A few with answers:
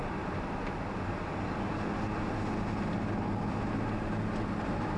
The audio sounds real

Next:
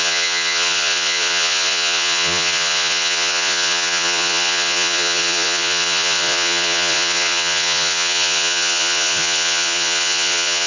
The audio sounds fake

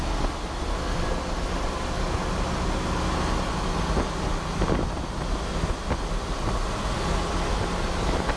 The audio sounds real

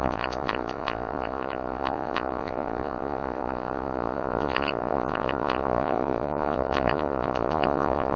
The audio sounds fake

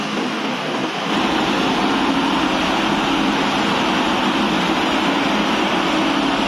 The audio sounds real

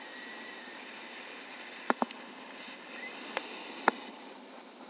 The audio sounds real